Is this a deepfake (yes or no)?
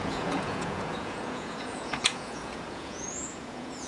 yes